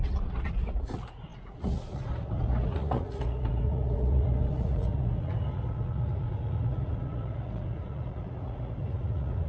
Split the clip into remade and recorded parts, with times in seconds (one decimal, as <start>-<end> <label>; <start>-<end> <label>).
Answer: 0.0-9.5 remade